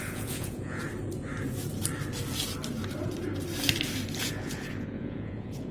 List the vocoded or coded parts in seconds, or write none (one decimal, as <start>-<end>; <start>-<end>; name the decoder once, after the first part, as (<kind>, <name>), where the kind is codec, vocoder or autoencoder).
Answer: 0.0-0.8 (vocoder, Vocos); 4.2-5.7